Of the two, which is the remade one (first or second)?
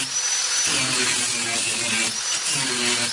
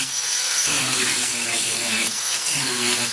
second